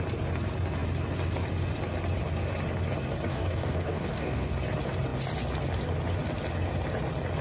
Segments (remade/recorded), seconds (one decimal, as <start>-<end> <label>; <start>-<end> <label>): 0.0-3.3 recorded; 3.3-4.5 remade; 4.5-7.4 recorded